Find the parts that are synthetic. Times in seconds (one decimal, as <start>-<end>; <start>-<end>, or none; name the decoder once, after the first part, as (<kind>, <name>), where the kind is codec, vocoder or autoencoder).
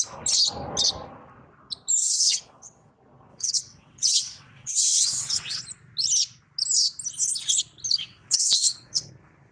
2.0-2.9 (vocoder, WaveNeXt); 3.3-5.6; 8.0-9.1